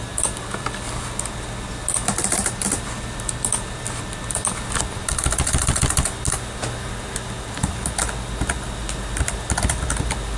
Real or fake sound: real